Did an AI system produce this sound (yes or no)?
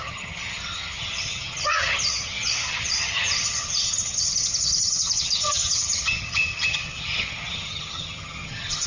yes